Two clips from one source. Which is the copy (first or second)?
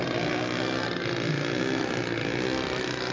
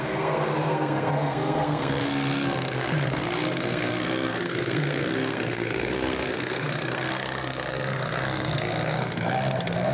second